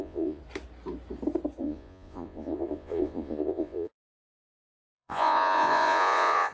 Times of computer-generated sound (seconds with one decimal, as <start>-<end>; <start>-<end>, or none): 0.0-0.4; 1.6-6.5